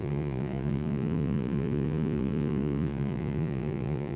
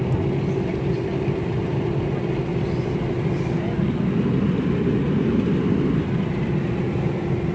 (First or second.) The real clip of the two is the second